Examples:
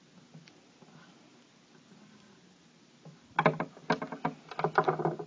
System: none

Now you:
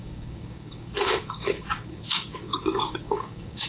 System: codec, DAC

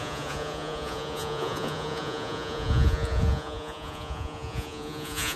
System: vocoder, Vocos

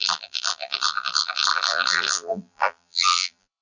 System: vocoder, BigVGAN v2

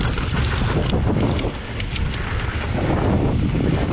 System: none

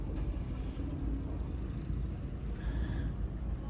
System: none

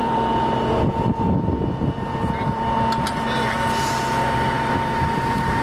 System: vocoder, BigVGAN v2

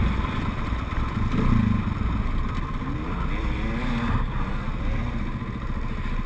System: none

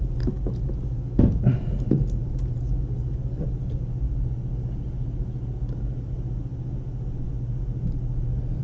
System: none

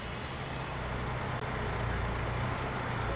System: none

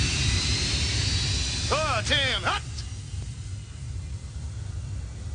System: none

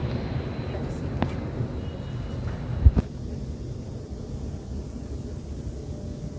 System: none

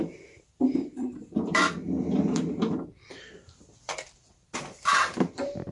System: vocoder, BigVGAN v2